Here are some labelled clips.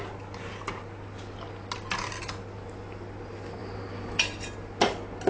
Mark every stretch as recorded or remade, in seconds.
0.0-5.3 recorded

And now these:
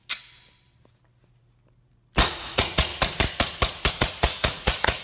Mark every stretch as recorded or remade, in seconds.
0.0-2.4 recorded; 2.4-2.9 remade; 2.9-3.9 recorded; 3.9-5.0 remade

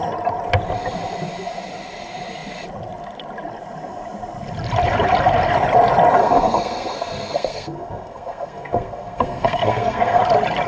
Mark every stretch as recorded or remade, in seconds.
0.0-6.2 recorded; 6.2-10.2 remade; 10.2-10.7 recorded

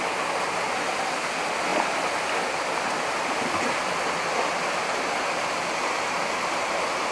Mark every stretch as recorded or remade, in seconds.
0.0-7.1 recorded

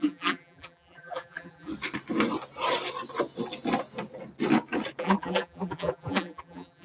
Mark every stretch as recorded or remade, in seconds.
0.0-1.7 remade; 1.7-5.0 recorded; 5.0-6.8 remade

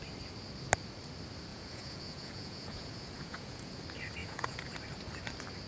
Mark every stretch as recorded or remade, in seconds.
0.0-1.5 recorded; 1.5-3.8 remade; 3.8-4.2 recorded; 4.2-4.7 remade; 4.7-5.7 recorded

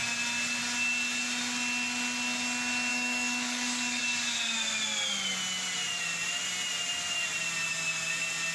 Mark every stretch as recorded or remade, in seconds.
0.0-2.9 recorded; 2.9-4.0 remade; 4.0-8.5 recorded